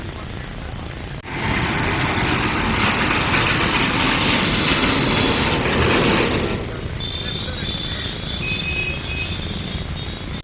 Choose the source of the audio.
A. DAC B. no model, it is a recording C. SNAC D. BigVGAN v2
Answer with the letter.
B